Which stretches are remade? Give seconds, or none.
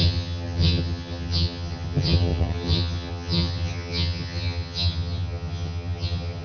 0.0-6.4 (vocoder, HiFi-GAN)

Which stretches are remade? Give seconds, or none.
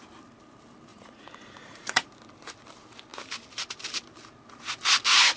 0.9-2.1 (vocoder, Vocos)